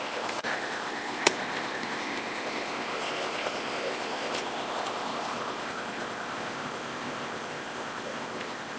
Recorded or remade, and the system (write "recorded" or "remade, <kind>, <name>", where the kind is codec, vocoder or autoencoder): remade, codec, ZipCodec